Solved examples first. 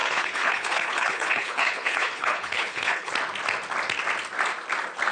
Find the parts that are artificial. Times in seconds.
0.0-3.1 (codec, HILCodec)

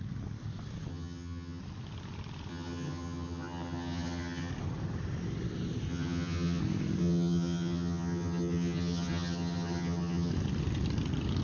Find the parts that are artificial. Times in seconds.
0.9-1.6 (vocoder, HiFi-GAN); 2.5-4.5; 5.9-6.6; 7.0-10.3

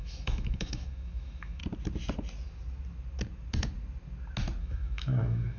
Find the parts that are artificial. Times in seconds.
0.0-1.6 (autoencoder, DAC-VAE); 4.6-5.6

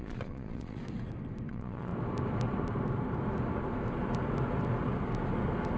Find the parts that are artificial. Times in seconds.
0.0-0.8 (vocoder, Vocos); 1.5-1.9

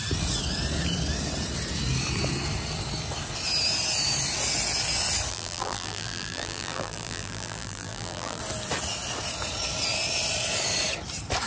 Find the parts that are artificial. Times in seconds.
5.3-8.4 (vocoder, BigVGAN v2)

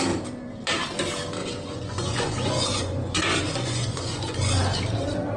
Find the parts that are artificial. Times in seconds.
1.4-4.6 (vocoder, Vocos)

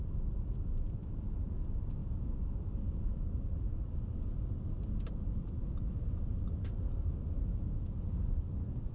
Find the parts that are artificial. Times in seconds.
6.6-7.1 (codec, SNAC)

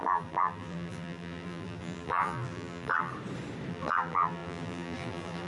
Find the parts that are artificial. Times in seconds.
0.0-3.1 (vocoder, BigVGAN v2); 3.7-5.5